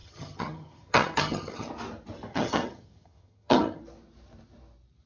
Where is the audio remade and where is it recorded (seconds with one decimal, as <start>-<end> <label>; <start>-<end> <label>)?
0.0-1.7 remade; 1.7-2.3 recorded; 2.3-3.8 remade; 3.8-5.1 recorded